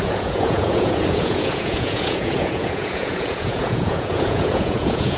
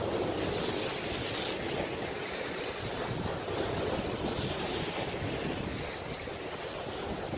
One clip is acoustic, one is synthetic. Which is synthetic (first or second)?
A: first